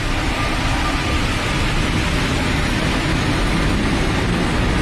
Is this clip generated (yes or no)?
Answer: no